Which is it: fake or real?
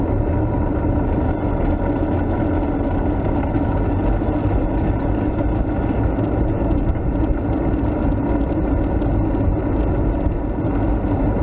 real